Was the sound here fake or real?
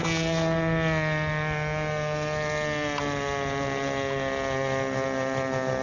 real